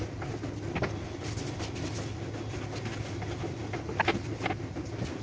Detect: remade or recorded recorded